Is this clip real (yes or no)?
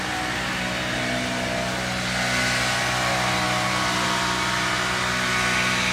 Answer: yes